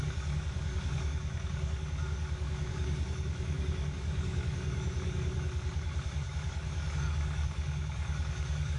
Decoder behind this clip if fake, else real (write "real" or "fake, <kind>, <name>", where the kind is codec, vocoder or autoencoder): fake, codec, DAC